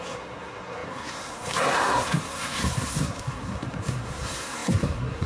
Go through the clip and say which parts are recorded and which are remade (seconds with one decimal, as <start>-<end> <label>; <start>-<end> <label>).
0.0-5.3 remade